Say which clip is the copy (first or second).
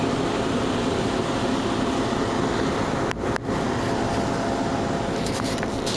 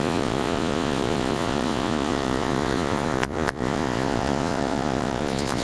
second